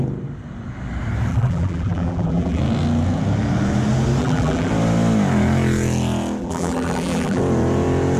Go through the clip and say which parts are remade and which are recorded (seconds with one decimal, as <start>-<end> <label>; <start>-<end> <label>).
0.0-1.3 recorded; 1.3-2.6 remade; 2.6-4.2 recorded; 4.2-4.7 remade; 4.7-6.4 recorded; 6.4-7.4 remade; 7.4-8.2 recorded